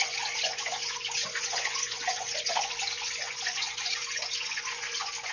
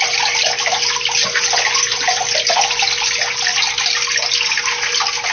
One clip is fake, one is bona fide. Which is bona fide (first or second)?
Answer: second